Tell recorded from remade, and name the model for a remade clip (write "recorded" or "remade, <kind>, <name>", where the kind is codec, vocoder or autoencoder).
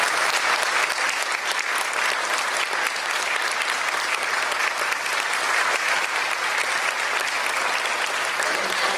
recorded